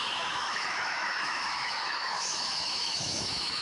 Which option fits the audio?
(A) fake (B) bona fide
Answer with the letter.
A